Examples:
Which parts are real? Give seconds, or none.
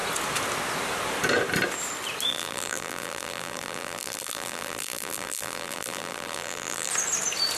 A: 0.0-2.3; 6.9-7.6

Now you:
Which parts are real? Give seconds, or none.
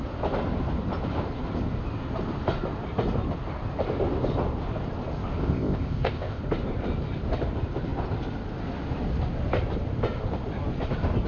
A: 0.0-5.4; 6.4-11.3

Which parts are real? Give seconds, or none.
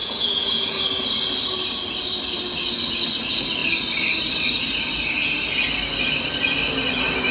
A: 0.8-7.3